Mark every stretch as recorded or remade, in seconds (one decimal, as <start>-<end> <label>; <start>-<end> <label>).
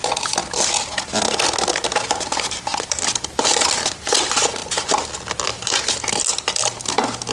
0.0-7.3 recorded